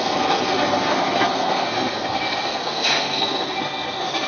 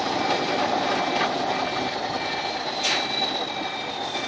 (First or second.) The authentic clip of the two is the second